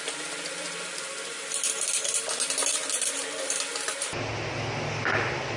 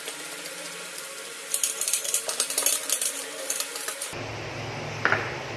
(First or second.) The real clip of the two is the first